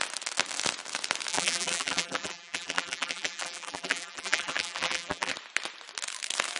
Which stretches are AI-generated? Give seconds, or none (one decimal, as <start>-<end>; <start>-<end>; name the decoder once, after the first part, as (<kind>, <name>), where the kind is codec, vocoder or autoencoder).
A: 1.3-5.3 (vocoder, BigVGAN v2)